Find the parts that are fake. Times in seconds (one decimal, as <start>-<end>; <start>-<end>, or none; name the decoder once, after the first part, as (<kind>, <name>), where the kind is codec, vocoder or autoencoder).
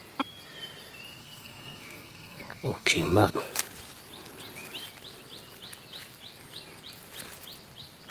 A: 1.2-3.4 (codec, SNAC)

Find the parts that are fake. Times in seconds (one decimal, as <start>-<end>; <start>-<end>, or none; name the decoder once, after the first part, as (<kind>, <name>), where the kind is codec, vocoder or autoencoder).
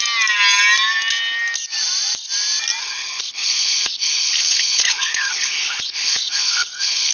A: 2.8-7.1 (codec, HILCodec)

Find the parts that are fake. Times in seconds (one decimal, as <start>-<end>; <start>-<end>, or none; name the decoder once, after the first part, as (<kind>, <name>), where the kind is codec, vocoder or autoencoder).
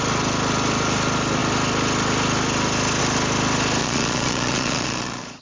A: 3.8-5.4 (vocoder, Vocos)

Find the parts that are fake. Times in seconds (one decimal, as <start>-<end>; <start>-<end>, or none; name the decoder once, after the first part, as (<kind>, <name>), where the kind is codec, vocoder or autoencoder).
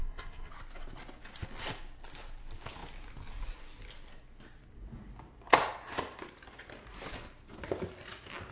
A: 0.0-0.5 (codec, SNAC)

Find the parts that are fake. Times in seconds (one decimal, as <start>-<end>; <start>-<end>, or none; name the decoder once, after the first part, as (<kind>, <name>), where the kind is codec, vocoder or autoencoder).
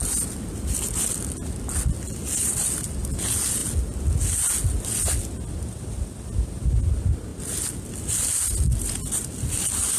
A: none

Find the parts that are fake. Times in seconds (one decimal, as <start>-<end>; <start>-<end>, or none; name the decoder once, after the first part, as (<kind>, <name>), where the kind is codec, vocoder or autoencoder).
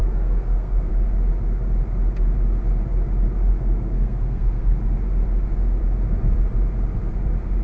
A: 0.0-0.9 (codec, SNAC); 3.5-4.8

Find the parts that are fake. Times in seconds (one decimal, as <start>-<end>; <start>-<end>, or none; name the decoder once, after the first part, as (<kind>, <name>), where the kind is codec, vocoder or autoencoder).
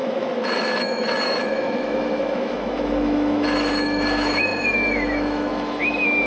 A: 0.0-6.3 (autoencoder, DAC-VAE)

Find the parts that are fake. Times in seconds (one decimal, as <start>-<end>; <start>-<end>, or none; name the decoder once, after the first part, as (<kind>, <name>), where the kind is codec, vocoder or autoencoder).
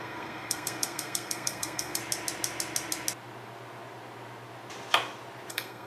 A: 0.0-2.0 (codec, SNAC); 5.5-5.9